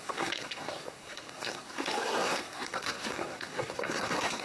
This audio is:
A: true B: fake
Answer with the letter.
B